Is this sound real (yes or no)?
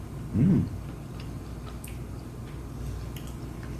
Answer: yes